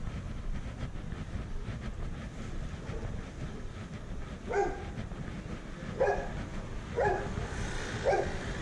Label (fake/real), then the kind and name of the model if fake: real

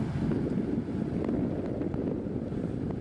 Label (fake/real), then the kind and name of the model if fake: real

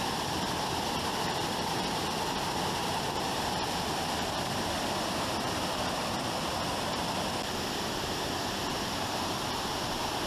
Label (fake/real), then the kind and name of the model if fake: fake, vocoder, BigVGAN v2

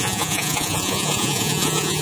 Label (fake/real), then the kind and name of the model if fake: fake, vocoder, Vocos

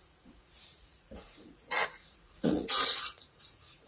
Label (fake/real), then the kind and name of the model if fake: fake, vocoder, Vocos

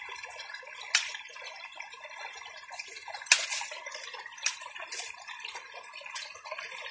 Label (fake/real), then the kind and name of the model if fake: real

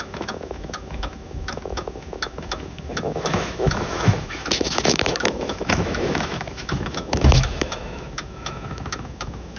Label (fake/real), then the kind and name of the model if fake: fake, autoencoder, DAC-VAE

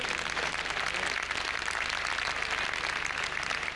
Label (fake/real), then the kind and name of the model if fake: real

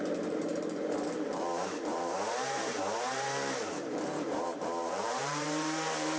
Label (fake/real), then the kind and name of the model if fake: fake, vocoder, BigVGAN v2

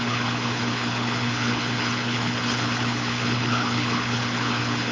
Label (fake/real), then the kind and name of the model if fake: fake, codec, HILCodec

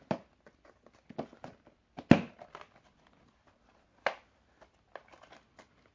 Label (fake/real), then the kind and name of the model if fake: real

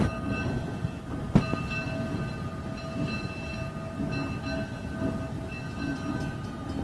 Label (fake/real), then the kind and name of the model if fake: real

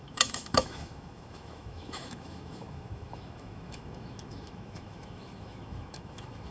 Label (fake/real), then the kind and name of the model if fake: fake, autoencoder, DAC-VAE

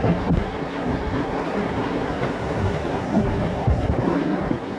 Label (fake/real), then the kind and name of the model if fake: fake, codec, SNAC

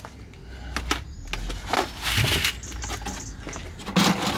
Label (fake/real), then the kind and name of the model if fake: real